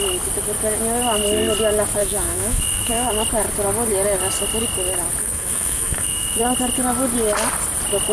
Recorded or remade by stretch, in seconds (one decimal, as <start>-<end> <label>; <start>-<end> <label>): 0.0-2.0 recorded; 2.0-3.1 remade; 3.1-5.2 recorded; 5.2-6.4 remade; 6.4-8.1 recorded